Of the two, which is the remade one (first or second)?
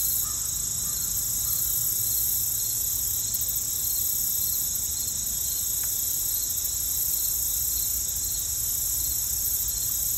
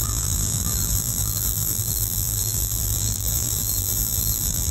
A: second